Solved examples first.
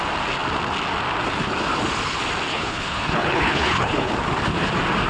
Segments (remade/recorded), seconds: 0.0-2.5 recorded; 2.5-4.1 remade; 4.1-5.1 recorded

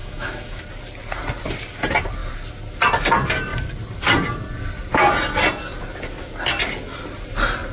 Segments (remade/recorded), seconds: 0.0-0.6 remade; 0.6-7.7 recorded

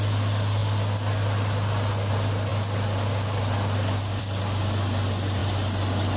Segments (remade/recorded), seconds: 0.0-6.2 recorded

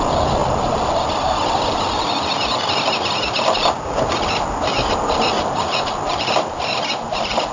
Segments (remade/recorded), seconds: 0.0-7.5 recorded

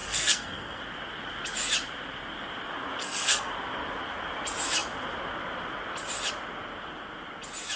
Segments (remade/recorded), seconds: 0.0-0.8 remade; 0.8-3.0 recorded; 3.0-3.5 remade; 3.5-7.8 recorded